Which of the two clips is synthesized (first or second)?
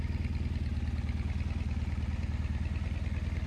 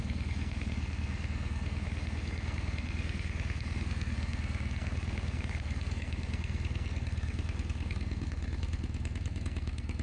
second